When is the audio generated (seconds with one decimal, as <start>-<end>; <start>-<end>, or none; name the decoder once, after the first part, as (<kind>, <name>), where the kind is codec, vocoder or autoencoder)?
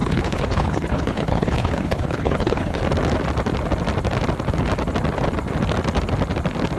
0.0-2.8 (codec, HILCodec)